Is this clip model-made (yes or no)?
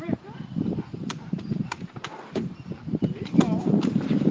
yes